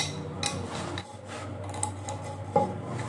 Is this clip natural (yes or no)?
yes